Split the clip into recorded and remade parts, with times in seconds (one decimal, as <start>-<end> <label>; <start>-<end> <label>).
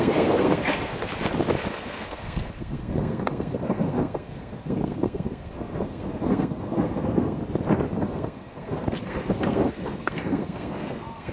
0.0-1.1 remade; 1.1-1.7 recorded; 1.7-7.4 remade; 7.4-8.0 recorded; 8.0-11.3 remade